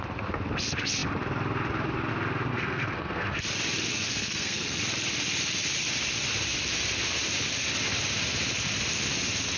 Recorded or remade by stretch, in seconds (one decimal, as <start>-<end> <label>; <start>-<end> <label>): 0.0-2.5 recorded; 2.5-3.4 remade; 3.4-3.9 recorded; 3.9-4.8 remade; 4.8-9.6 recorded